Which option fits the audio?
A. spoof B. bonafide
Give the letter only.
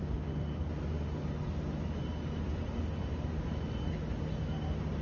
B